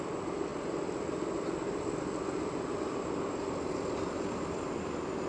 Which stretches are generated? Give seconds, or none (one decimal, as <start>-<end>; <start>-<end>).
none